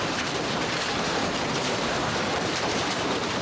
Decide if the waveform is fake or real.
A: fake